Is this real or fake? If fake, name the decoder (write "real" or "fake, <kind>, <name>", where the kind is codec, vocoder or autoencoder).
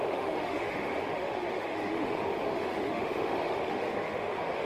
fake, autoencoder, DAC-VAE